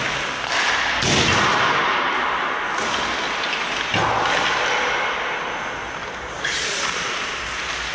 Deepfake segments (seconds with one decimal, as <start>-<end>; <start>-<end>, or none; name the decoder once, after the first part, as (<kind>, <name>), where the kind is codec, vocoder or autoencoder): 6.0-7.4 (vocoder, BigVGAN v2)